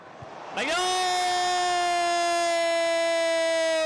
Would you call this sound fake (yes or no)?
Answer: no